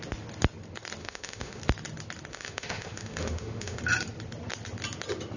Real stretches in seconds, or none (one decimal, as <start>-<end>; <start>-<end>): 0.0-1.0; 1.6-2.3; 3.8-5.4